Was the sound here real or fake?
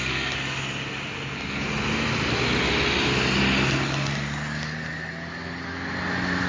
real